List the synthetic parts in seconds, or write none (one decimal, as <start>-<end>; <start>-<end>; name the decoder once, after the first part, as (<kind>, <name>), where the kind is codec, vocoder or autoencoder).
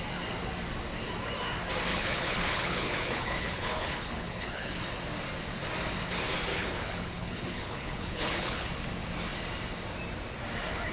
1.9-4.8 (codec, HILCodec); 6.5-8.7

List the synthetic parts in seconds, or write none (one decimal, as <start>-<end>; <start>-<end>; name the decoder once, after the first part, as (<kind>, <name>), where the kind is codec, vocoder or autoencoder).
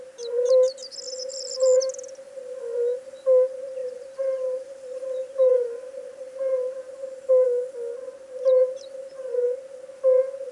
3.8-7.3 (vocoder, BigVGAN v2)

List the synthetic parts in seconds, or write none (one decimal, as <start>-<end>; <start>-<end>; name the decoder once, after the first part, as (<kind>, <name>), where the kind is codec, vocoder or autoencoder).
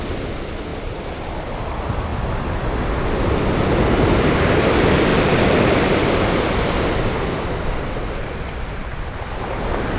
0.7-1.2 (vocoder, BigVGAN v2); 5.1-6.1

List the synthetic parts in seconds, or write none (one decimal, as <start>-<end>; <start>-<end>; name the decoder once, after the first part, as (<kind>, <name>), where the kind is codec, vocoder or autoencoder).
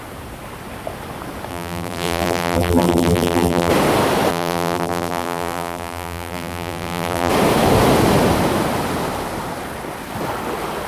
1.5-3.7 (vocoder, BigVGAN v2); 4.3-7.3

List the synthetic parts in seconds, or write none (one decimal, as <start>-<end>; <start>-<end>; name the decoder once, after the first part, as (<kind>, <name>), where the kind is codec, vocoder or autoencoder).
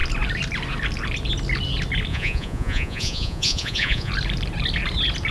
2.1-4.1 (vocoder, Vocos)